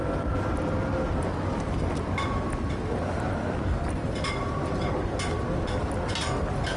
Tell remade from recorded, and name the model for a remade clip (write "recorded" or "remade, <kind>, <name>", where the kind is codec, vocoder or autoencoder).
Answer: recorded